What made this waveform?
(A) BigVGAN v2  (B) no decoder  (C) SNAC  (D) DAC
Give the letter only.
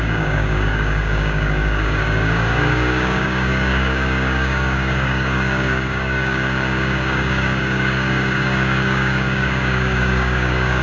D